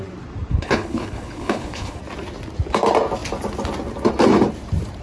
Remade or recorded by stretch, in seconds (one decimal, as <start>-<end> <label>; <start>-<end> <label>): 0.0-0.5 recorded; 0.5-2.0 remade; 2.0-5.0 recorded